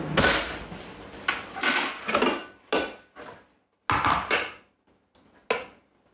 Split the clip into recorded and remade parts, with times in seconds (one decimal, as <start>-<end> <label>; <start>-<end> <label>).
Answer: 0.0-6.1 recorded